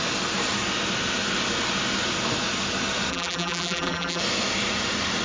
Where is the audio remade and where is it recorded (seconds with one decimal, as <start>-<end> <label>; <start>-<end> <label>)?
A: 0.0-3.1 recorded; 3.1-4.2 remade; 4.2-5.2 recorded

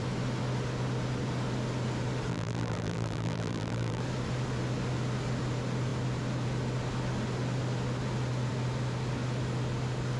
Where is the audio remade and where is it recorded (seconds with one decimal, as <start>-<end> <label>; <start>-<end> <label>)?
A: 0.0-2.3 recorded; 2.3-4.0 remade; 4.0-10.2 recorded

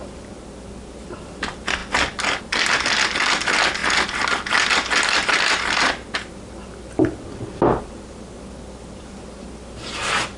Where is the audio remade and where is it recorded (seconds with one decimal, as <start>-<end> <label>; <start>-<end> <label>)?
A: 0.0-10.4 recorded

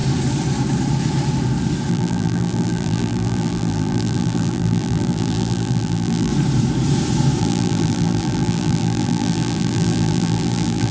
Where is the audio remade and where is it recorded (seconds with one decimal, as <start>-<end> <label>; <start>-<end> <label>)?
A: 0.0-1.9 recorded; 1.9-6.3 remade; 6.3-7.4 recorded; 7.4-10.9 remade